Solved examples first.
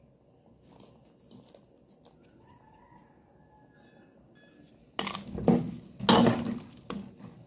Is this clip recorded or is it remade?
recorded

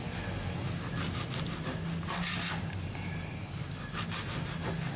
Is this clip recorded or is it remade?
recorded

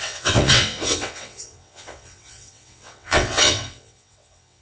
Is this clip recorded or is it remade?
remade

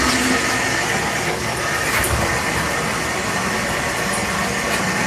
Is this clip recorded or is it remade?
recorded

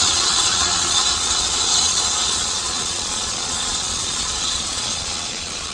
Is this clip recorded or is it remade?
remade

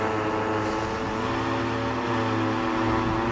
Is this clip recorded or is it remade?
recorded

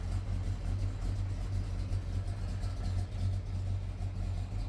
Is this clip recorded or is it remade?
recorded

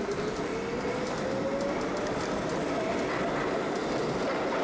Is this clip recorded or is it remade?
recorded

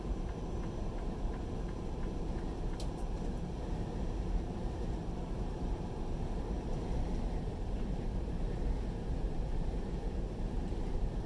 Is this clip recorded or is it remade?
remade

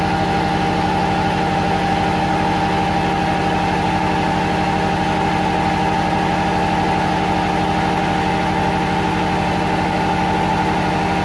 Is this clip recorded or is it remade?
recorded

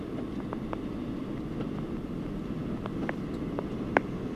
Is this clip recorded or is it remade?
recorded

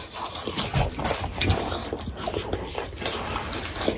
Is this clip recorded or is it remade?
recorded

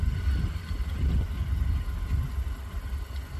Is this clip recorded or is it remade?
recorded